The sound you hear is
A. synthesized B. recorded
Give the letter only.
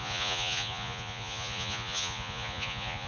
A